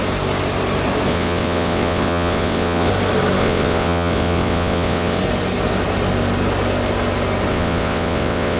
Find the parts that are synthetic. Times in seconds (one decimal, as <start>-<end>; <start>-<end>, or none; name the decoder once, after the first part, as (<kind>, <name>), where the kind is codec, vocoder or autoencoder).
1.1-2.9 (vocoder, WaveNeXt); 3.4-5.2; 7.5-8.6